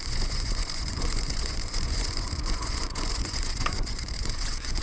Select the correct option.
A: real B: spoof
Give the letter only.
B